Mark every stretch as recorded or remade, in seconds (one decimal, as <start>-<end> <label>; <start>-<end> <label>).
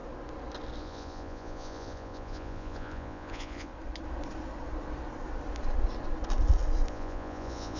0.0-0.8 recorded; 0.8-3.7 remade; 3.7-6.9 recorded; 6.9-7.8 remade